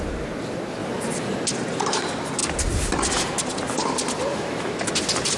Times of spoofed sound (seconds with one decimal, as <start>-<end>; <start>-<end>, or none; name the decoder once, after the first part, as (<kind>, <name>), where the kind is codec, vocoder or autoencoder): 4.3-4.8 (autoencoder, DAC-VAE)